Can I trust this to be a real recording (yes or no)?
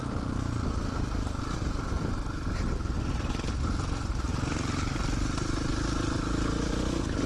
yes